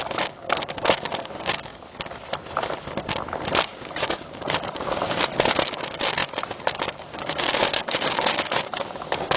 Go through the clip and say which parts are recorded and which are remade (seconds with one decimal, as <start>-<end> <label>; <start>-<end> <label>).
0.0-1.7 remade; 1.7-3.7 recorded; 3.7-9.4 remade